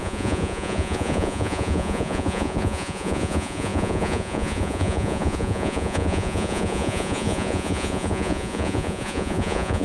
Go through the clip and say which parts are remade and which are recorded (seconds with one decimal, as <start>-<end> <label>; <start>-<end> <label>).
0.0-9.8 remade